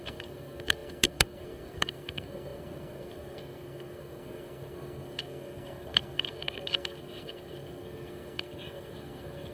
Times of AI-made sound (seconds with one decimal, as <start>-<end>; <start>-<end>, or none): 0.0-9.5